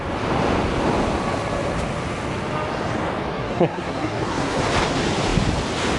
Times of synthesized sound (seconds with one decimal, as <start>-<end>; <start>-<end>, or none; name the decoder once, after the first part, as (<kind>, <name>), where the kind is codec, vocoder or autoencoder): 3.3-4.6 (codec, SNAC)